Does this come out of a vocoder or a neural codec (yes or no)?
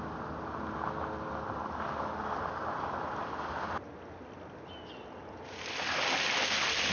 no